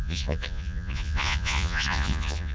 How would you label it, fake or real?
fake